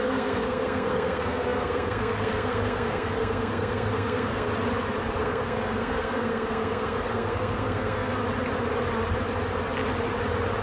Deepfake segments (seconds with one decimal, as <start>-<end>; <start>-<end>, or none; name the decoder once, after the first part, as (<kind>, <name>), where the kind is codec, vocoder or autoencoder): 0.0-4.5 (codec, SNAC); 5.2-8.2